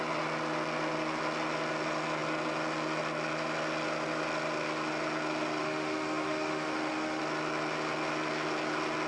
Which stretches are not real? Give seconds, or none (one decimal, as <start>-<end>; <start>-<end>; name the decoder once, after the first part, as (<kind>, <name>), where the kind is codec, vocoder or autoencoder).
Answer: 5.6-7.2 (autoencoder, DAC-VAE)